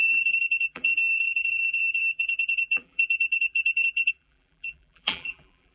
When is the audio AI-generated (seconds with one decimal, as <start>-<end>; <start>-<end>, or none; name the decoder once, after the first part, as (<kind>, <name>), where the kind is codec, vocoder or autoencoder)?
0.0-5.7 (vocoder, BigVGAN v2)